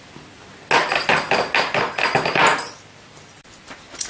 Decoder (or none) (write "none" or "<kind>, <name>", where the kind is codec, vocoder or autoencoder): none